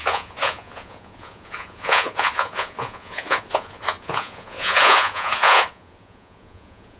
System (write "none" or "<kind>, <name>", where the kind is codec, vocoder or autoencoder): vocoder, Vocos